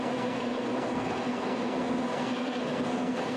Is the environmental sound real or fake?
fake